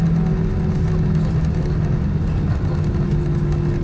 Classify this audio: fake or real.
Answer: real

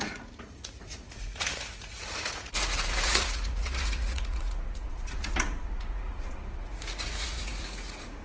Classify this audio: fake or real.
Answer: fake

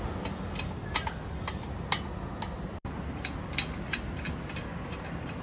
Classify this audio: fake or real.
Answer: real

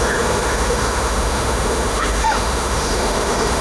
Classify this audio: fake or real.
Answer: fake